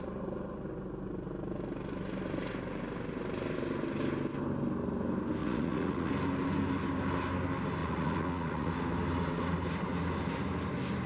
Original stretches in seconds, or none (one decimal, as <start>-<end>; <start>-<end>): 0.0-5.4; 6.1-7.8; 8.7-11.1